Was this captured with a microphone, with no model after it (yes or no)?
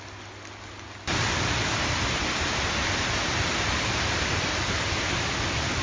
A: yes